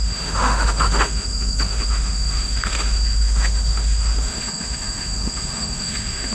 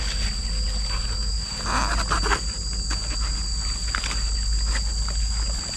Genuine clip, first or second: second